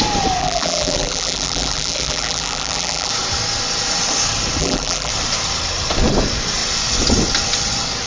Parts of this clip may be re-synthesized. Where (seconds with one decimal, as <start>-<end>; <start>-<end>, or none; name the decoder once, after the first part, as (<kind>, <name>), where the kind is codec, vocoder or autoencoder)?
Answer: 0.4-3.1 (vocoder, BigVGAN v2); 4.6-5.1